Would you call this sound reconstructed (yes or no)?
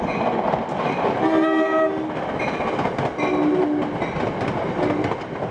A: no